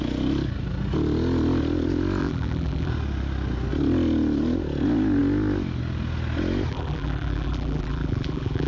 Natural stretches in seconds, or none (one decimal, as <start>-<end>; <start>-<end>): 0.0-2.2; 2.9-6.7